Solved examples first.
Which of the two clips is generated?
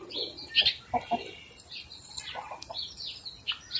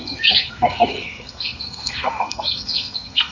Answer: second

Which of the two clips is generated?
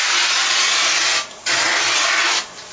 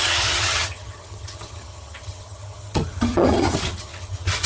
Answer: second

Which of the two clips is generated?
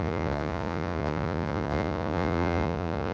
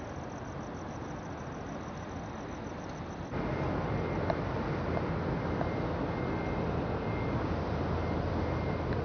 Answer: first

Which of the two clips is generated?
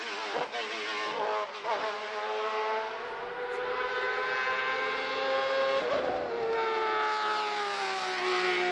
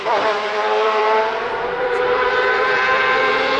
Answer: second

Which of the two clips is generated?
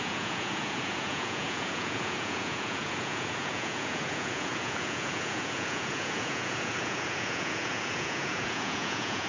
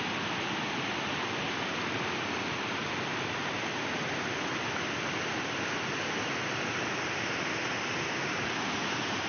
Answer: first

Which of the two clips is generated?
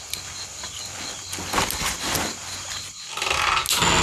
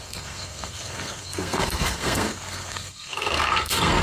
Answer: second